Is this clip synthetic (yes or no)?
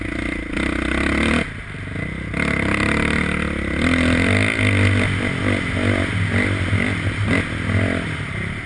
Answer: no